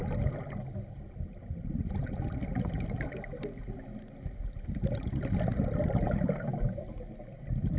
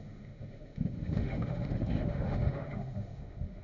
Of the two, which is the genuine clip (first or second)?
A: first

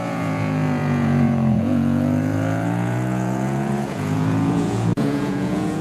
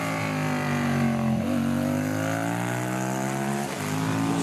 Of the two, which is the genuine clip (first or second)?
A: second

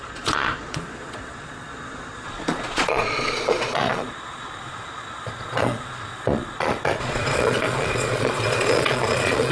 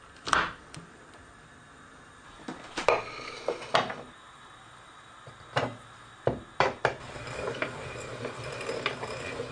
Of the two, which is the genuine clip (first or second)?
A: second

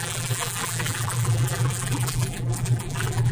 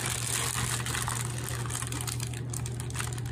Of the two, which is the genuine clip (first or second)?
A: second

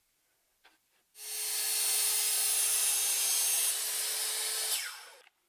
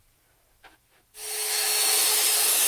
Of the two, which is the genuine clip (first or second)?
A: first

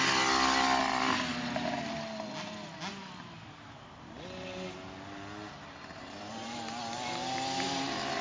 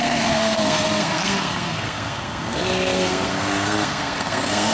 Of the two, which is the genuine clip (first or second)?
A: first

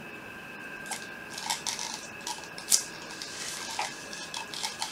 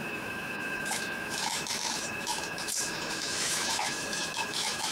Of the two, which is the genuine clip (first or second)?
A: first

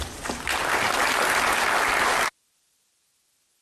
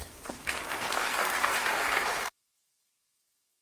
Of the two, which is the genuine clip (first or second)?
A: first